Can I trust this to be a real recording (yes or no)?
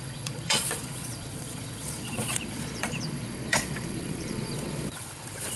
no